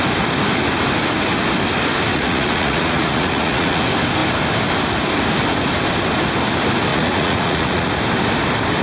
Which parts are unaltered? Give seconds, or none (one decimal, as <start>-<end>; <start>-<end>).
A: 0.0-2.1; 3.8-6.9; 7.9-8.8